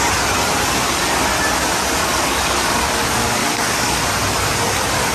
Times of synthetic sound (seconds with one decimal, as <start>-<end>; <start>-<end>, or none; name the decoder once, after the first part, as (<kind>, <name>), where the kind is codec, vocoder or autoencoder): 2.0-4.0 (codec, DAC)